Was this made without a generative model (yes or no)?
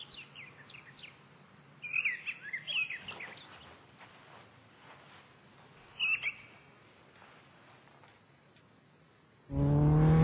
yes